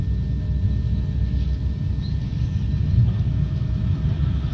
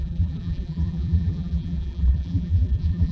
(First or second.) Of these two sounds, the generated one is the second